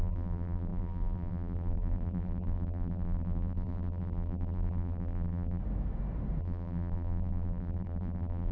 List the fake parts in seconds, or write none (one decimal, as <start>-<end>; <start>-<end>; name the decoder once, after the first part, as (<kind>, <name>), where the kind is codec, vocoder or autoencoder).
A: 0.0-5.6 (vocoder, BigVGAN v2); 6.4-8.5